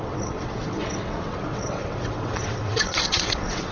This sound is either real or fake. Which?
fake